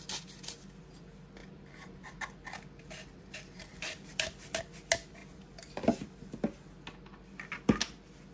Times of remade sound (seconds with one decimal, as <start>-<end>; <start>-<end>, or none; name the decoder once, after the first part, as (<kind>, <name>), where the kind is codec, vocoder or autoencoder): 1.4-4.6 (vocoder, BigVGAN v2)